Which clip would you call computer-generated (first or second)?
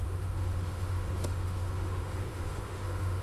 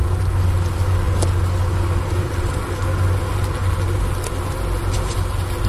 first